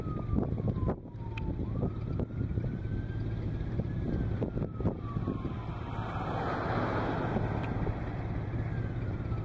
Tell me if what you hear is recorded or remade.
recorded